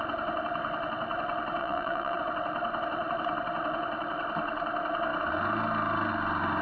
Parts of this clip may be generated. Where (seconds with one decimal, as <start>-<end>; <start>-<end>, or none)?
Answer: 1.6-2.2

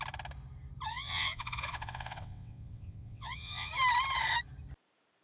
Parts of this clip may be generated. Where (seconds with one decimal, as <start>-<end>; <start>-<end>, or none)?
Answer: 0.9-3.7